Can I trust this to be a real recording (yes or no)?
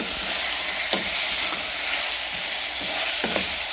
yes